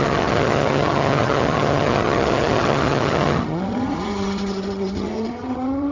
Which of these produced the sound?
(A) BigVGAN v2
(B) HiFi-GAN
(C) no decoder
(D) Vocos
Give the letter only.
B